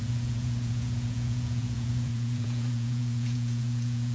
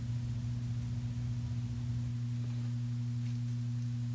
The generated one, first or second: first